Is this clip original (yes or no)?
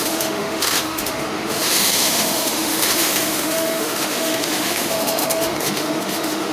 no